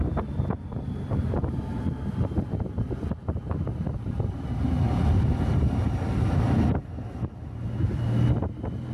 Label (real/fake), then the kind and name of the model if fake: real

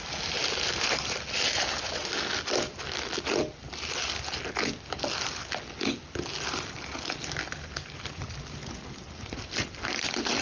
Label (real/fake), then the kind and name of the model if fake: real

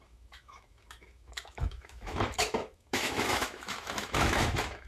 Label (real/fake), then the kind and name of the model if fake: fake, autoencoder, DAC-VAE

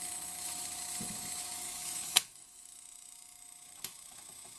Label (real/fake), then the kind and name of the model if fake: fake, autoencoder, DAC-VAE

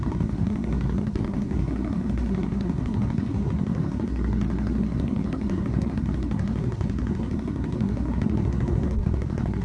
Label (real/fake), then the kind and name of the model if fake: fake, codec, SNAC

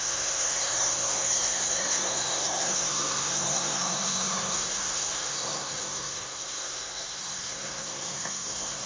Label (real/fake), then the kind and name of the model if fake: fake, codec, SNAC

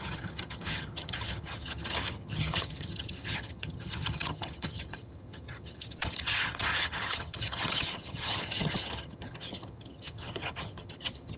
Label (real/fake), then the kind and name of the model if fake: fake, vocoder, HiFi-GAN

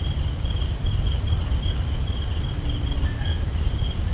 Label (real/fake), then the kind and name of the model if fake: real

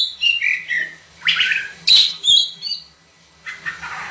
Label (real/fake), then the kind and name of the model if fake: real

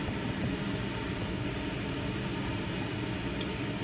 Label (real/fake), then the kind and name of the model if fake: real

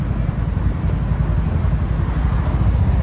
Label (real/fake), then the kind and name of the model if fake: real